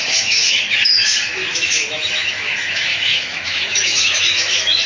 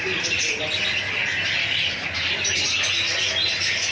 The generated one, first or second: first